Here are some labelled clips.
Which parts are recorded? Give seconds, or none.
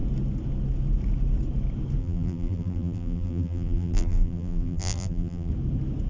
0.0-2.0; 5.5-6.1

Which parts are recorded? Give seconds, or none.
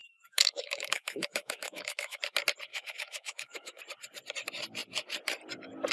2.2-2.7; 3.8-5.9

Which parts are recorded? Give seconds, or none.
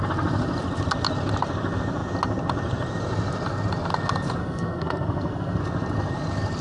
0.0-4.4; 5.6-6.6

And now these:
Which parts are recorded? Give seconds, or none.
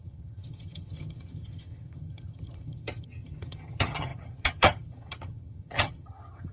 none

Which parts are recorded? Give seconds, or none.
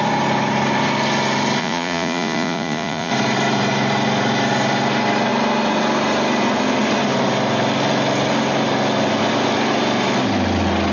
0.0-1.6; 3.1-10.9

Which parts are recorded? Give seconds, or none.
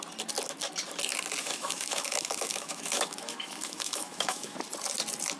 0.0-1.4; 4.6-5.4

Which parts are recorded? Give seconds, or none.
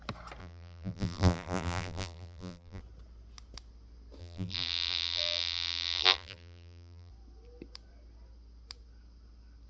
0.0-0.4; 2.8-4.2; 7.1-9.7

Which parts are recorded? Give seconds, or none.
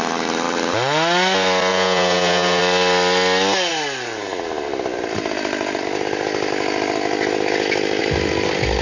0.0-1.7; 2.6-8.8